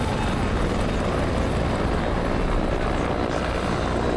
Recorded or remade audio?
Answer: recorded